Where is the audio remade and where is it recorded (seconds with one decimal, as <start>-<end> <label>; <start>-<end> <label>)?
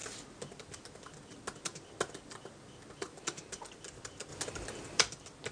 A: 0.0-5.5 recorded